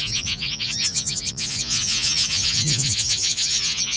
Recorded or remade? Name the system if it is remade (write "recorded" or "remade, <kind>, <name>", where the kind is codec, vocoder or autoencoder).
remade, vocoder, Vocos